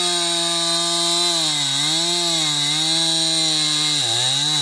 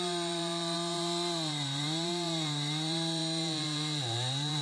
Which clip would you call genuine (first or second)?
first